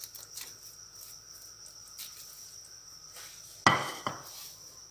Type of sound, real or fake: real